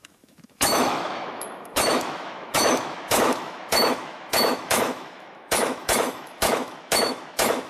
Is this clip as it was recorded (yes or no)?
no